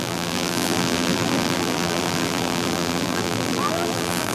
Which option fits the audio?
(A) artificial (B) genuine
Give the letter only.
A